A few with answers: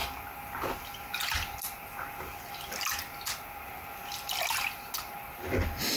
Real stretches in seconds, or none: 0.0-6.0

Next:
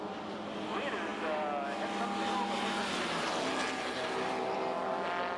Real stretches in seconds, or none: 0.0-5.4

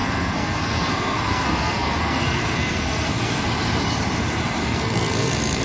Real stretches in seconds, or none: 3.4-4.6

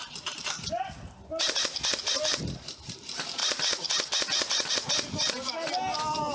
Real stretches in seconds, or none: 0.0-6.3

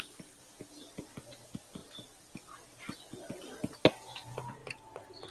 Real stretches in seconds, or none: 0.0-5.3

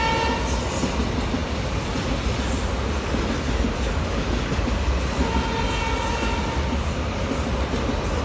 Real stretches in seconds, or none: 0.0-8.2

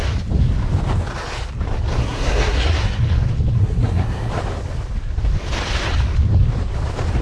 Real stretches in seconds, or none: 0.0-2.0; 3.0-3.6; 4.3-7.2

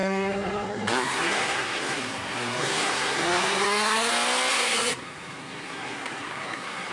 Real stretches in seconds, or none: 4.1-4.5